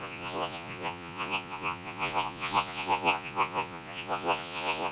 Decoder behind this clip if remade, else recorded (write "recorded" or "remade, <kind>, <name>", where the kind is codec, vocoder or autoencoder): remade, vocoder, Vocos